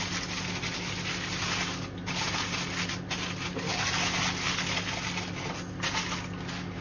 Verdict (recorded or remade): recorded